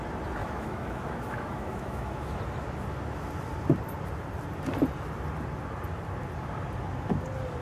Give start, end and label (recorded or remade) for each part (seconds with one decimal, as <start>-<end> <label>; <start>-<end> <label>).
0.0-0.4 recorded; 0.4-2.4 remade; 2.4-7.6 recorded